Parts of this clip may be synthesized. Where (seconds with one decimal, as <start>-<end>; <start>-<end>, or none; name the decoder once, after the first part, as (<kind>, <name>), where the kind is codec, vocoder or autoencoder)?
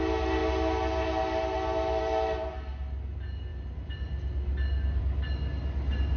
none